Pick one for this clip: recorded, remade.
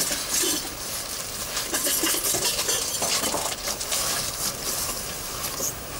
recorded